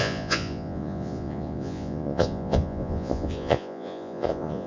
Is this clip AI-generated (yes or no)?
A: yes